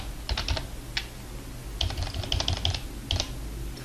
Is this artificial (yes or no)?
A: no